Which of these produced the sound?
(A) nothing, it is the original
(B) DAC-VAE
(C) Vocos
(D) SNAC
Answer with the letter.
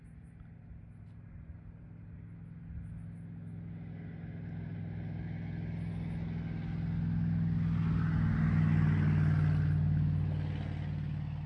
A